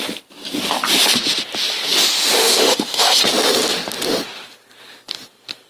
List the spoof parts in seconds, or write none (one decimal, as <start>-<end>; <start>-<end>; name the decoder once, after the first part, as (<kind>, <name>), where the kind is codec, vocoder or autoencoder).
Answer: 2.4-3.2 (autoencoder, DAC-VAE)